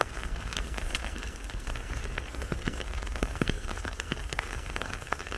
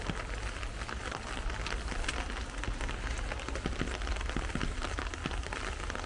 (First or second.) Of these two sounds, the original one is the second